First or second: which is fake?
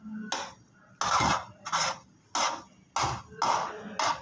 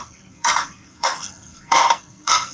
second